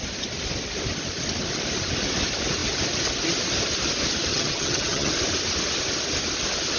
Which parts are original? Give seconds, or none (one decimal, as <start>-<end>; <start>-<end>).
0.0-4.3; 5.1-6.8